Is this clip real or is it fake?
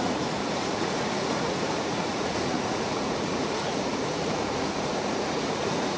fake